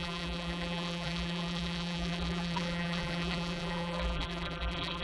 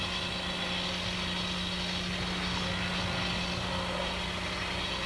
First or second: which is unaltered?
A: second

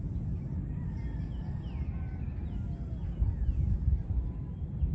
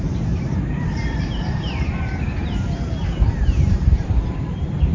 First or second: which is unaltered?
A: first